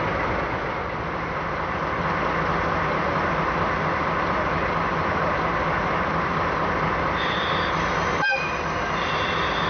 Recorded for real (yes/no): yes